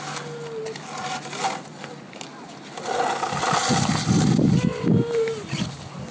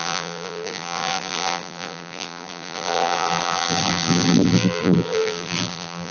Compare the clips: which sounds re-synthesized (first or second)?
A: second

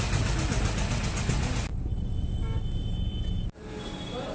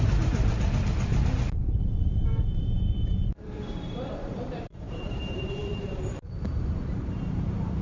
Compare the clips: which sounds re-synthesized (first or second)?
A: second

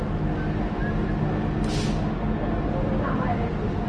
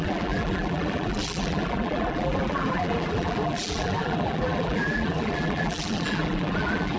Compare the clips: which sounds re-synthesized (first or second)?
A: second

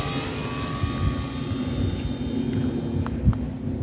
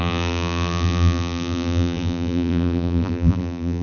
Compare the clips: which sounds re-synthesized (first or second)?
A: second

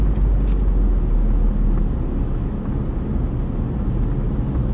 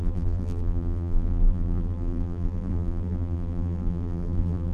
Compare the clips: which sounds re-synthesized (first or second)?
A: second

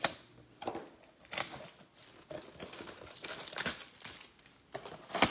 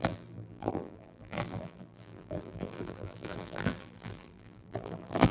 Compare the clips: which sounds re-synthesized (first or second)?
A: second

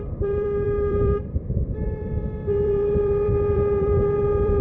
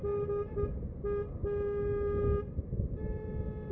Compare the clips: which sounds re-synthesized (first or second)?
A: first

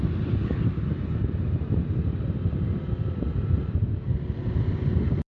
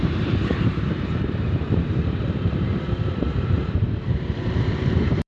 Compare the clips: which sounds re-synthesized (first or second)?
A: second